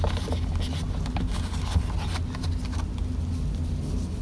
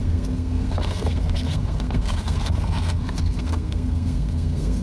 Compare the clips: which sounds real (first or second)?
first